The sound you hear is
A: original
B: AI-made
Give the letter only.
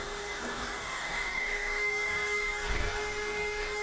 B